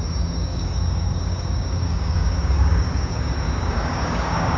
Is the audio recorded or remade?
remade